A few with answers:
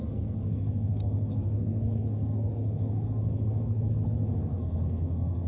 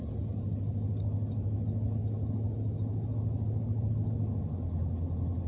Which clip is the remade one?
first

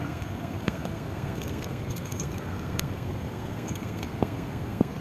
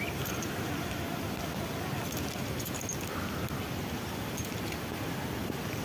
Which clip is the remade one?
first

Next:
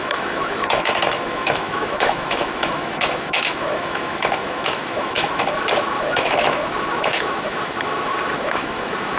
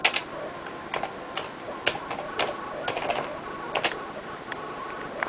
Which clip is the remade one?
first